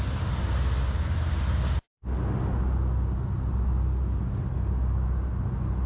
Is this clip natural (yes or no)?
yes